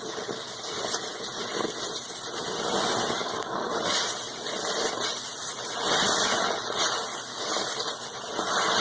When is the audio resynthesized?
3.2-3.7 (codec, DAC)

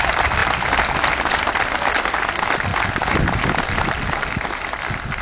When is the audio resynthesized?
none

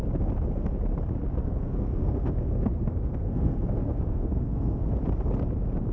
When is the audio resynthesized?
1.4-4.9 (codec, SNAC)

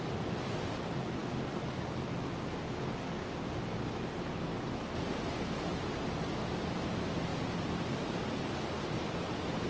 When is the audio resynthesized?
none

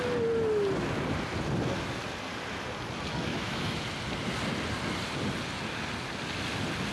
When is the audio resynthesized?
3.3-3.8 (autoencoder, DAC-VAE)

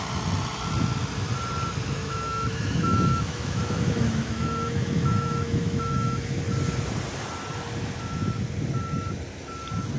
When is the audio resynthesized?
2.0-6.4 (autoencoder, DAC-VAE)

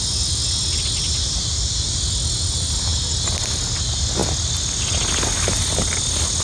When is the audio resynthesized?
none

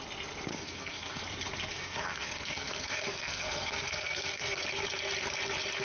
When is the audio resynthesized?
0.5-1.2 (codec, SNAC); 1.7-4.6